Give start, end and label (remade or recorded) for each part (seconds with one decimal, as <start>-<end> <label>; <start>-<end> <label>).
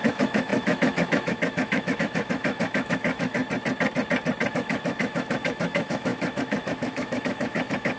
0.0-3.4 remade; 3.4-4.5 recorded; 4.5-8.0 remade